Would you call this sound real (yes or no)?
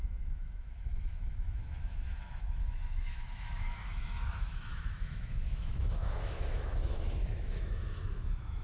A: no